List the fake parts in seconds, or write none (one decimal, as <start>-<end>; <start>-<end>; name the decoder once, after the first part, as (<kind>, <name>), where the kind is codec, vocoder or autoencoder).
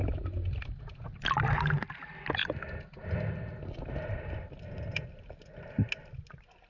none